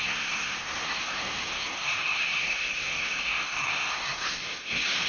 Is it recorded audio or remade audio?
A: remade